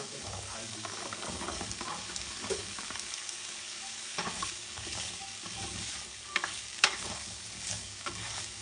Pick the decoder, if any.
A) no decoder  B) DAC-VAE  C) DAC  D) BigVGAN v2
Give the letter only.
C